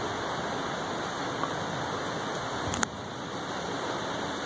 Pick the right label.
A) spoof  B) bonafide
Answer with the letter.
B